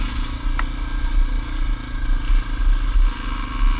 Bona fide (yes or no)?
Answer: yes